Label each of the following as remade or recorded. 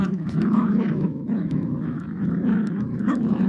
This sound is remade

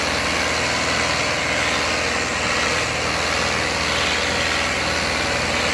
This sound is recorded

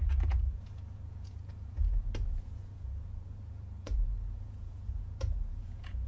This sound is remade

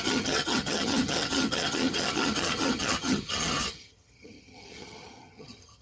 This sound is remade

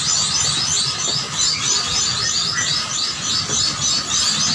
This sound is recorded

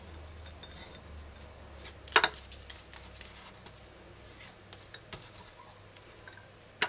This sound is recorded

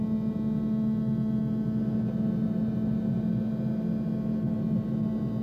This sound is recorded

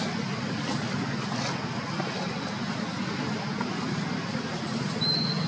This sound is recorded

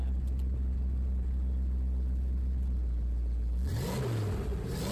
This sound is recorded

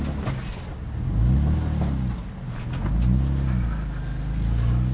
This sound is recorded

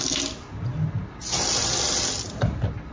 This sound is recorded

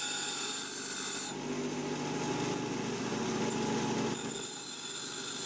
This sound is recorded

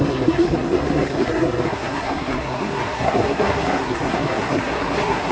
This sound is remade